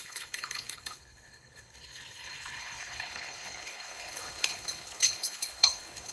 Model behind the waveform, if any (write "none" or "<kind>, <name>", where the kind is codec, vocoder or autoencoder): codec, HILCodec